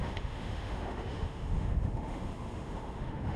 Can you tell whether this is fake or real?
fake